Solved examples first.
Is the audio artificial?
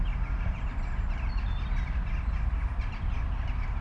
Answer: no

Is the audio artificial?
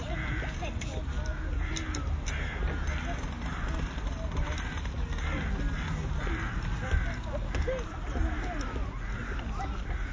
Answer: no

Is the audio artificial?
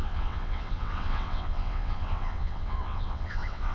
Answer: yes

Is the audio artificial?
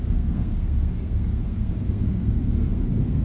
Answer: yes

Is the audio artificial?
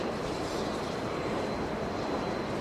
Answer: no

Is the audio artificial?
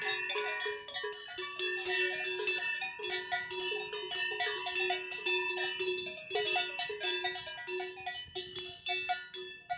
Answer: no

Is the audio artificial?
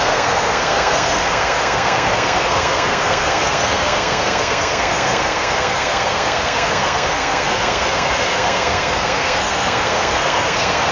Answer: yes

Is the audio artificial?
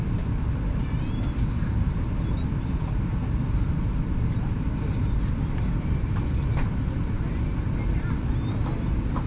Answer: no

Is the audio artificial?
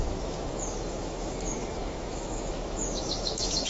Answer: yes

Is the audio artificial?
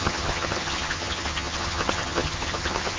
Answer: yes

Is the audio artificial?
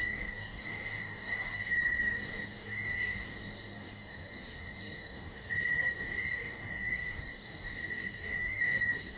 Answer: yes